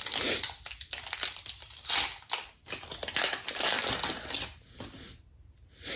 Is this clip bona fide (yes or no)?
yes